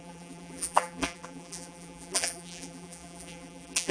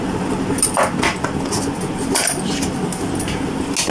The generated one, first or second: first